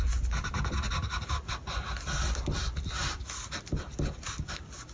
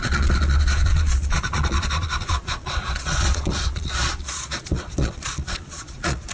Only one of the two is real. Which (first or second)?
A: first